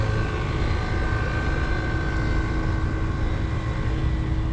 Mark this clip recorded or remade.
recorded